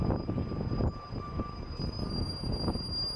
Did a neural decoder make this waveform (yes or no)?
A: no